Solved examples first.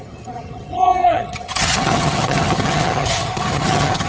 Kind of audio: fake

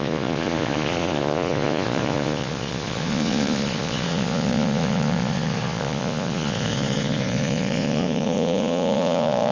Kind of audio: fake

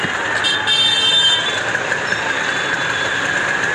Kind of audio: real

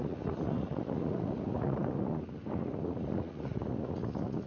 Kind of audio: fake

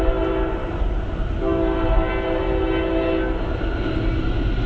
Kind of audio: real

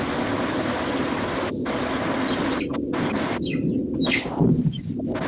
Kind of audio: real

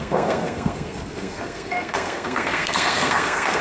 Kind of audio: fake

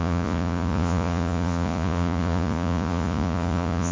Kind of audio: fake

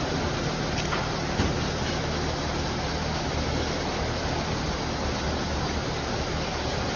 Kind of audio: real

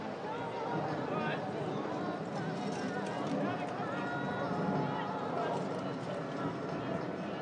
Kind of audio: real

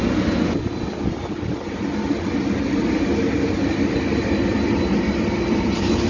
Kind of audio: real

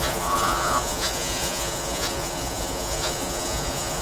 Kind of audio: fake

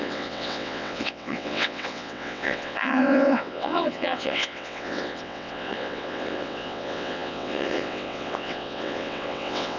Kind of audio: fake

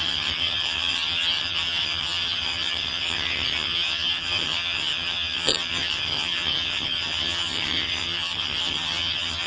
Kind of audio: fake